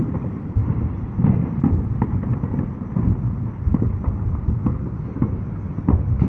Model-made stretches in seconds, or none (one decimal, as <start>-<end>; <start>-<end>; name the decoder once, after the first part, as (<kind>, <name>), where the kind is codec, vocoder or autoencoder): 0.0-0.6 (vocoder, BigVGAN v2); 1.6-2.9; 5.8-6.3